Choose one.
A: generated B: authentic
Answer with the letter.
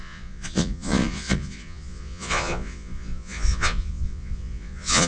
A